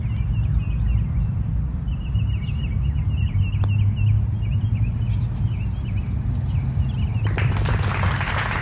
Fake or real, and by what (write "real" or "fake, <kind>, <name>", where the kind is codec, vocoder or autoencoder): real